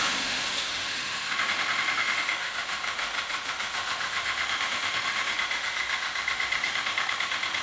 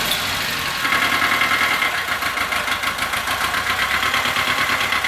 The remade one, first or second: first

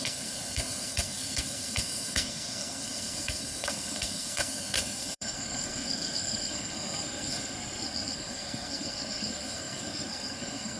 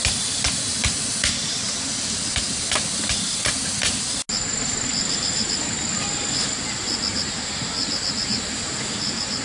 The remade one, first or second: first